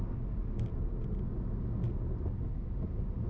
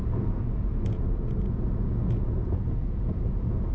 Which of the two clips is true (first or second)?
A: first